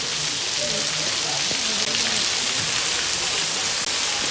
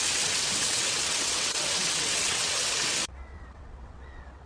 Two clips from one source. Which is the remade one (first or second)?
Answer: second